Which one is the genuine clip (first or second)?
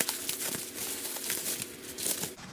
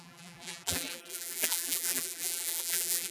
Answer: first